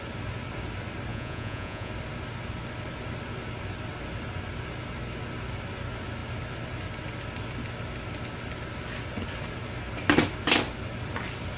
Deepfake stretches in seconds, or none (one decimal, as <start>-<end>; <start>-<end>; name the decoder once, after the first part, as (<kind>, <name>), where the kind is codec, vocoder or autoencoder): 1.1-1.9 (vocoder, Vocos)